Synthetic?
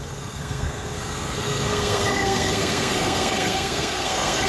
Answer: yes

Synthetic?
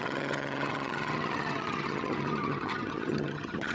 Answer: yes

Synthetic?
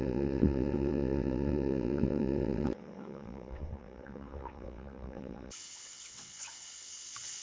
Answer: yes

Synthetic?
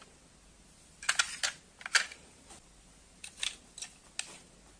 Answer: no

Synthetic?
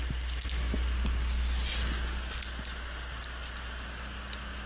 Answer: no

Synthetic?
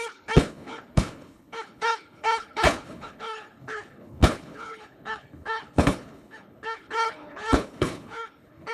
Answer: yes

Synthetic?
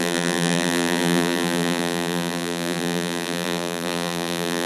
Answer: yes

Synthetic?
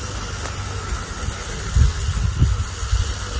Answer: no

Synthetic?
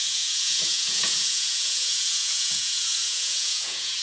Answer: yes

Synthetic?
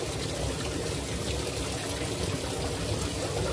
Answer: no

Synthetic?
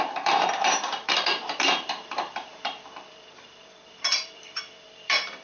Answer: yes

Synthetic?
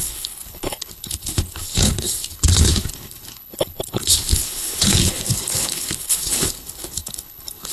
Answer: yes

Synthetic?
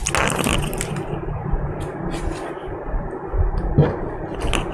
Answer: no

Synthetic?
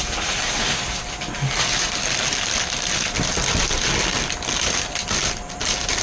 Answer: no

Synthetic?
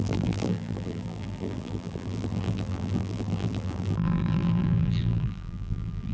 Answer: yes